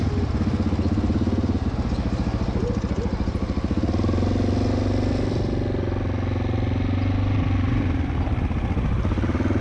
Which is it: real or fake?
real